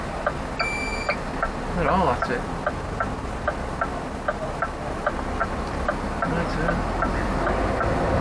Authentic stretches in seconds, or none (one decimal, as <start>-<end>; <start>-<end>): 0.0-0.9; 1.6-5.4; 6.3-8.2